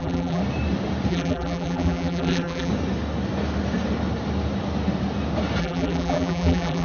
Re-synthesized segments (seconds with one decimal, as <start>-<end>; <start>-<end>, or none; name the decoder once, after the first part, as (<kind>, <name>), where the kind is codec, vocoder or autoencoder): 0.0-0.4 (vocoder, BigVGAN v2); 1.1-2.7; 5.6-6.8

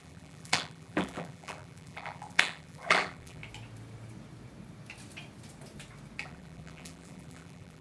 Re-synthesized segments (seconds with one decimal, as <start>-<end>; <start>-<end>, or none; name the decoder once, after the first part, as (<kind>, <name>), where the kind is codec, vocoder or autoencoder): 0.0-3.4 (vocoder, BigVGAN v2); 6.2-7.8

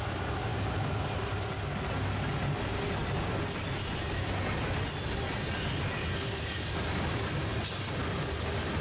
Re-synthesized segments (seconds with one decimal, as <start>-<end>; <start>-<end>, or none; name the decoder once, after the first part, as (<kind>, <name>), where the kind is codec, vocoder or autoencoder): none

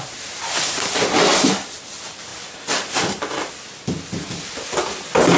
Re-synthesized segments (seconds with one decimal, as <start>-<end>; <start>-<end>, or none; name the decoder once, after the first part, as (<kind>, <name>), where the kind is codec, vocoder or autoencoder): 2.3-3.5 (vocoder, BigVGAN v2)

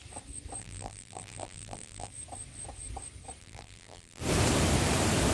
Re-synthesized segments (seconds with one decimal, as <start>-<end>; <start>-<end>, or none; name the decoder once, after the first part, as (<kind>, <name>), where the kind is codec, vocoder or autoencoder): 0.6-2.1 (vocoder, BigVGAN v2); 3.4-4.2

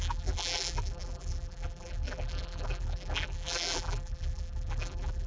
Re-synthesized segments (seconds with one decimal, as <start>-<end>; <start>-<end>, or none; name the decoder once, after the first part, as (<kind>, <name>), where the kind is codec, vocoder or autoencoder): 0.0-5.3 (vocoder, BigVGAN v2)

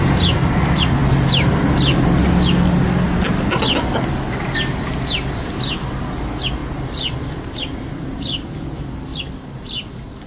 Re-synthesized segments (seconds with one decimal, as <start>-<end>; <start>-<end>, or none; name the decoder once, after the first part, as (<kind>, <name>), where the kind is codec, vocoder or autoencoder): 9.1-9.9 (vocoder, BigVGAN v2)